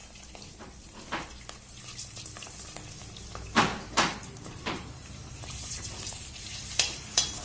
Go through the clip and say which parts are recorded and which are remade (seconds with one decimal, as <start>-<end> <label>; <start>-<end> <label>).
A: 0.0-3.7 recorded; 3.7-7.4 remade